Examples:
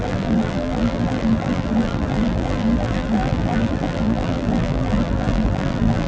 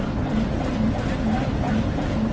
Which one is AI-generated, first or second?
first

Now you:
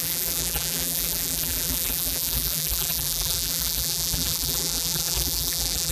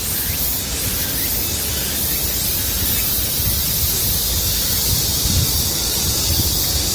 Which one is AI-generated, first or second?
first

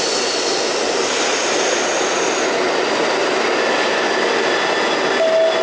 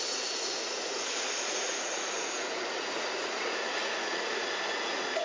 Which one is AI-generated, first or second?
second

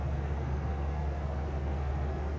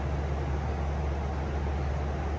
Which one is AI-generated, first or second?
first